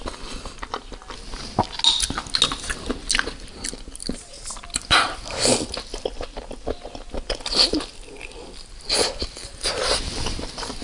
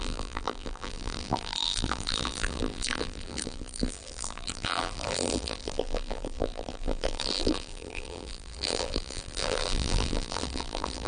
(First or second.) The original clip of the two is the first